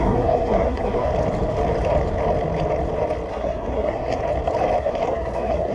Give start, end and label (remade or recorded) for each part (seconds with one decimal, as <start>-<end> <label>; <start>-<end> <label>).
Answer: 0.0-1.1 remade; 1.1-3.3 recorded; 3.3-4.2 remade; 4.2-4.8 recorded; 4.8-5.7 remade